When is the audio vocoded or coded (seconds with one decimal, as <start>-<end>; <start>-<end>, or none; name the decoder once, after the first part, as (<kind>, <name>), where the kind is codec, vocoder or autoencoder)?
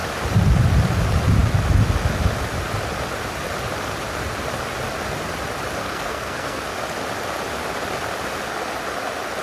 5.8-6.6 (codec, SNAC)